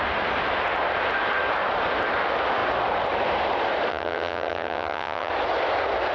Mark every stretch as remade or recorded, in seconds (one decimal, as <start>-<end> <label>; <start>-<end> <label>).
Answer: 0.0-3.9 recorded; 3.9-5.3 remade; 5.3-6.1 recorded